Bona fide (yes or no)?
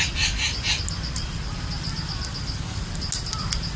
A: yes